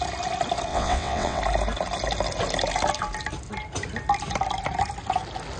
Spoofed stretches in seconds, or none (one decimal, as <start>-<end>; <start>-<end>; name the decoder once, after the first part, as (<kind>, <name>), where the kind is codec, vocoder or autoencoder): 0.7-1.4 (vocoder, WaveNeXt)